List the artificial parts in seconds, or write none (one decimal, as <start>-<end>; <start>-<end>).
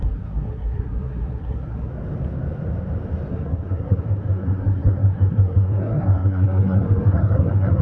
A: 0.0-1.9; 3.3-7.8